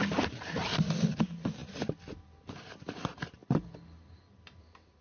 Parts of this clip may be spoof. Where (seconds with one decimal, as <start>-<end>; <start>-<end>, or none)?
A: none